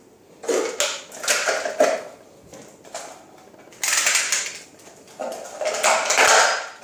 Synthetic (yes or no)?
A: no